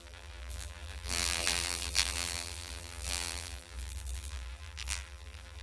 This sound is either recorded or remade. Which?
remade